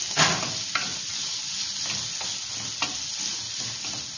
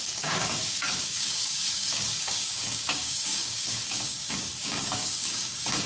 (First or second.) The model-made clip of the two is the second